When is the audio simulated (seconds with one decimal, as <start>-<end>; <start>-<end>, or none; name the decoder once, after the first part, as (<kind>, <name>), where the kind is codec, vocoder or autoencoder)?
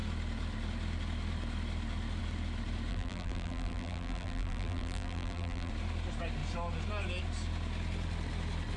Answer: 2.9-5.7 (vocoder, BigVGAN v2)